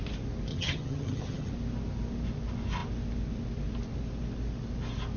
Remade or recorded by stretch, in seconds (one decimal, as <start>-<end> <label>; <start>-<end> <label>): 0.0-0.5 recorded; 0.5-1.5 remade; 1.5-5.2 recorded